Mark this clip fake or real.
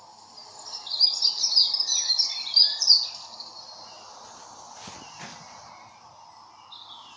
real